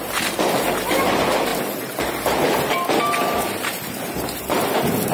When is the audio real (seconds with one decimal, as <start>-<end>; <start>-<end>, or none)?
0.0-1.5; 4.6-5.1